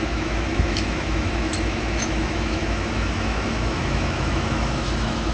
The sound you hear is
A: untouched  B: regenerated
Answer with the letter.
B